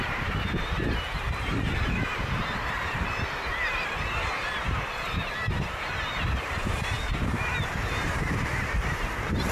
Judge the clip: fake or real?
fake